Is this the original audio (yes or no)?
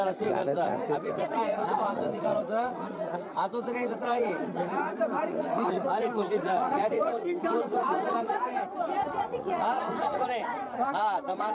no